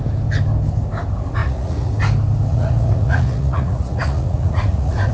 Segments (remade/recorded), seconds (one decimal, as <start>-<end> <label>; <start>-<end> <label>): 0.0-1.4 recorded; 1.4-1.9 remade; 1.9-2.5 recorded; 2.5-5.1 remade